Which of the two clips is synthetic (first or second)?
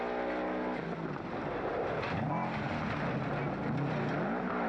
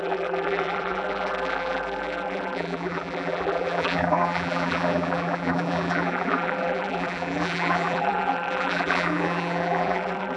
second